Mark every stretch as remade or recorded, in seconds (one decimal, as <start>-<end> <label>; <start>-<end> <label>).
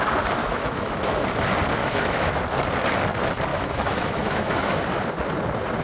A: 0.0-0.4 recorded; 0.4-1.2 remade; 1.2-1.8 recorded; 1.8-2.4 remade; 2.4-3.5 recorded; 3.5-4.8 remade; 4.8-5.8 recorded